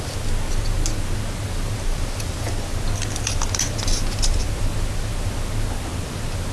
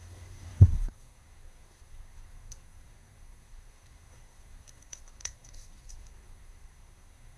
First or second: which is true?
first